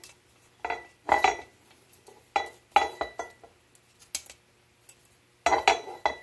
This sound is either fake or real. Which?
real